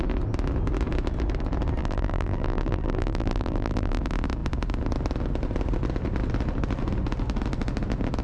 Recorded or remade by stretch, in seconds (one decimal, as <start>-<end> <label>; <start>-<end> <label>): 0.0-1.8 recorded; 1.8-4.0 remade; 4.0-8.2 recorded